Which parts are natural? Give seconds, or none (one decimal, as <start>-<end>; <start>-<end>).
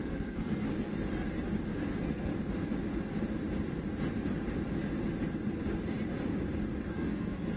0.9-1.9; 2.3-6.9